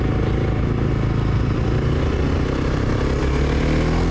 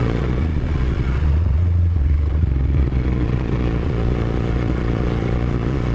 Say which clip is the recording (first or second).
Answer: first